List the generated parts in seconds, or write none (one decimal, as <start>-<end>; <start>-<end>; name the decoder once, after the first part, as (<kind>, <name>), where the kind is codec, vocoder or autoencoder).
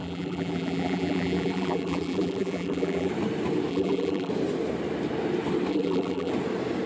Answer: 0.0-3.1 (vocoder, BigVGAN v2); 3.7-4.3; 5.7-6.3